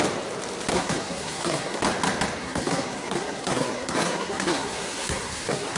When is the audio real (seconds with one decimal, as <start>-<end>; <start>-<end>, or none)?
0.0-0.7; 1.8-2.4